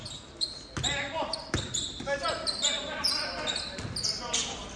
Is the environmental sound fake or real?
real